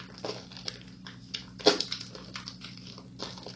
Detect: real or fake real